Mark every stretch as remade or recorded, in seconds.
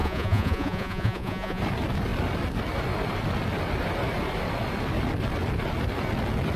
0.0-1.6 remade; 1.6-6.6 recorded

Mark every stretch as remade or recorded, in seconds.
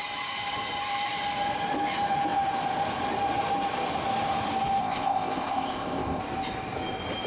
0.0-4.8 recorded; 4.8-6.2 remade; 6.2-7.3 recorded